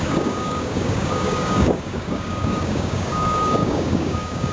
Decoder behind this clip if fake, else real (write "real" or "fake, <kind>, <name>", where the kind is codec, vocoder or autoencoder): fake, codec, DAC